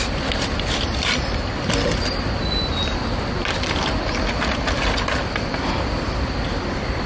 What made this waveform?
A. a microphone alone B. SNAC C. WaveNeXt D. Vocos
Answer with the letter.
A